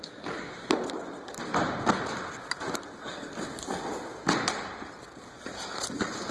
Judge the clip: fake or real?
real